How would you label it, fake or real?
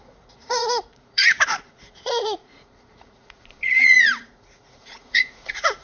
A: fake